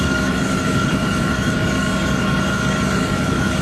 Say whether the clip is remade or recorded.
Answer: remade